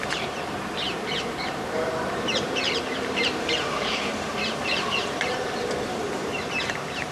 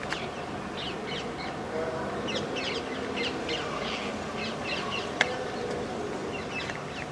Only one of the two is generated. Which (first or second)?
first